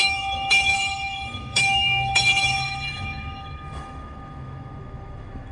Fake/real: fake